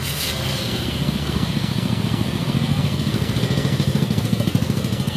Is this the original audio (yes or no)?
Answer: no